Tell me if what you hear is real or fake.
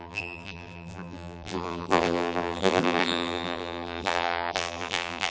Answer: fake